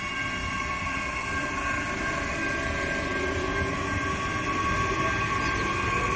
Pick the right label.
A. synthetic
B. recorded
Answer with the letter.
B